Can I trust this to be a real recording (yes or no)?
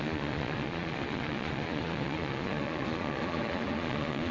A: no